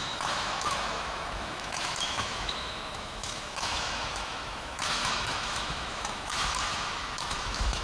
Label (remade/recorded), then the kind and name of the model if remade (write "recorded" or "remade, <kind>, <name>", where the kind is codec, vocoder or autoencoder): remade, autoencoder, DAC-VAE